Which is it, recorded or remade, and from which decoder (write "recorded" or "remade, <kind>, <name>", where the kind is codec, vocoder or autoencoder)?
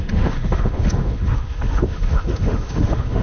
remade, autoencoder, DAC-VAE